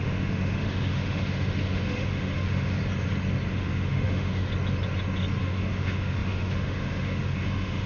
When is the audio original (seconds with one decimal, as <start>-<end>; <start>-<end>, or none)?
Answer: 2.8-3.5; 4.5-5.4